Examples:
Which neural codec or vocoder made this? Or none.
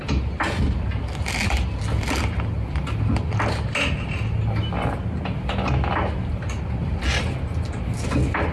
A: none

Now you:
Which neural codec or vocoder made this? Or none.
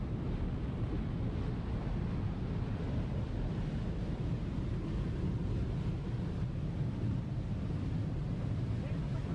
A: none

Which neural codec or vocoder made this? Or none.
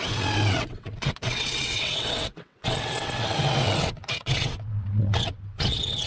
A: vocoder, WaveNeXt